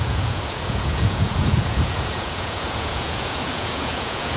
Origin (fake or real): fake